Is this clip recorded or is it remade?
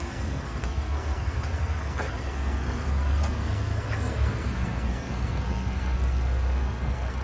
remade